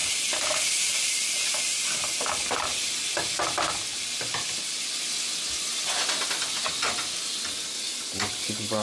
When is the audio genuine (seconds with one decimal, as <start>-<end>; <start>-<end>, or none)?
0.0-8.8